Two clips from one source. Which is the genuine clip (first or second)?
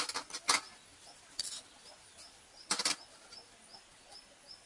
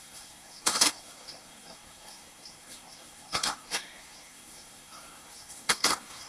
first